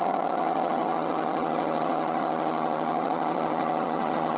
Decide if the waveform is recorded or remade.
remade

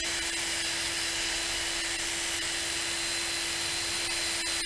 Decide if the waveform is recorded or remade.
recorded